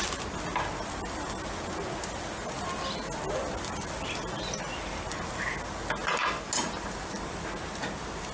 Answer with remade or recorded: recorded